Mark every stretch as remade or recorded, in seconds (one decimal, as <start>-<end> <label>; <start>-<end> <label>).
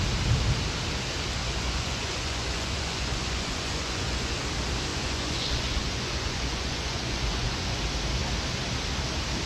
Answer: 0.0-1.4 recorded; 1.4-4.3 remade; 4.3-4.9 recorded; 4.9-7.8 remade; 7.8-9.5 recorded